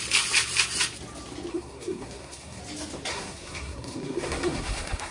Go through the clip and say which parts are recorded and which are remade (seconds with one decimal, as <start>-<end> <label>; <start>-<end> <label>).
0.0-1.5 recorded; 1.5-2.6 remade; 2.6-3.1 recorded; 3.1-5.1 remade